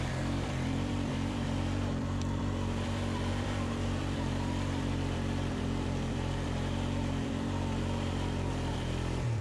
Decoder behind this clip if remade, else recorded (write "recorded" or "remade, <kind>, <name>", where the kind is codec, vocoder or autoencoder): remade, vocoder, BigVGAN v2